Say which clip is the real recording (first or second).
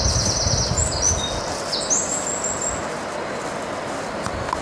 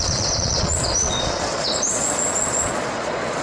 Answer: first